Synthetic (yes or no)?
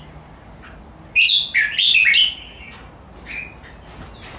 no